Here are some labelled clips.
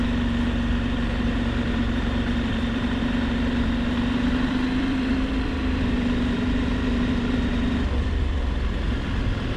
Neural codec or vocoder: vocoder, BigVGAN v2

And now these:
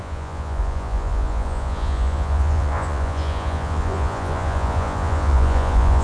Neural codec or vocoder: vocoder, Vocos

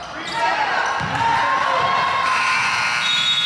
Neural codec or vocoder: none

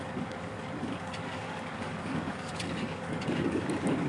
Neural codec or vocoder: codec, DAC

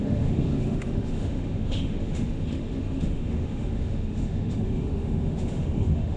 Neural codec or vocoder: autoencoder, DAC-VAE